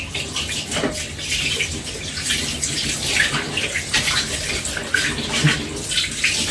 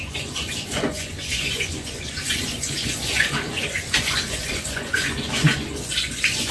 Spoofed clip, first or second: second